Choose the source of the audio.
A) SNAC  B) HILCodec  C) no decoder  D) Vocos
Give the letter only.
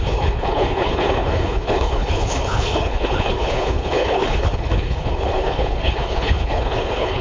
B